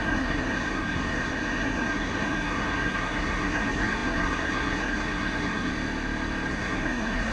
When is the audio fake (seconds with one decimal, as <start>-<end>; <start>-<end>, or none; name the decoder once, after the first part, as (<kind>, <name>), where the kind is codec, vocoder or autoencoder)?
0.0-5.7 (codec, SNAC); 6.5-7.3